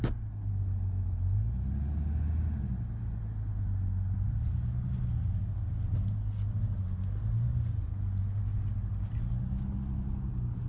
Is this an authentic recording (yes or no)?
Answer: yes